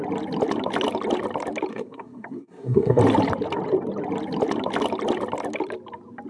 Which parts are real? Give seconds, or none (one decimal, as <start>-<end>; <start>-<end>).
0.0-1.7; 3.0-6.3